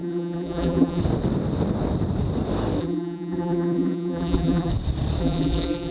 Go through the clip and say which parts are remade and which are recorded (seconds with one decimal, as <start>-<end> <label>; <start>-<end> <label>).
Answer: 0.0-1.0 remade; 1.0-2.8 recorded; 2.8-4.7 remade; 4.7-5.2 recorded; 5.2-5.9 remade